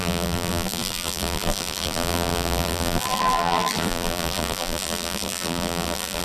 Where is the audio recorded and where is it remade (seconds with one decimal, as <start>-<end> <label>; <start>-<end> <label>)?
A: 0.0-6.2 remade